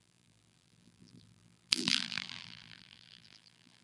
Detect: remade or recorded remade